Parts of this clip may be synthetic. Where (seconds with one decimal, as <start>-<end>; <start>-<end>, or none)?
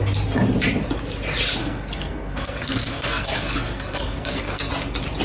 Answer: 1.6-4.7